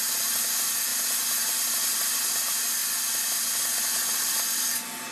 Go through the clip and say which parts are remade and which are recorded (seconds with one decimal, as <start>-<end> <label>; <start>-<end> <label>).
0.0-5.1 recorded